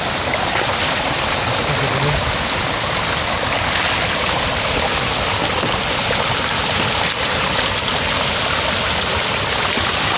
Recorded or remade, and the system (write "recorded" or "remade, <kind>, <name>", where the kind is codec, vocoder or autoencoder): recorded